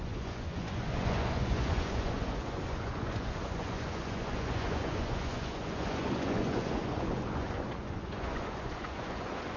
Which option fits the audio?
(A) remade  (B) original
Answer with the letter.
A